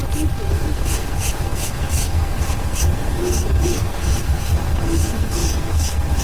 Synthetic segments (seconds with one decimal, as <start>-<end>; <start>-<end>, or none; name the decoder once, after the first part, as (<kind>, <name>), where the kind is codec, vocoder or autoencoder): 0.5-6.2 (codec, SNAC)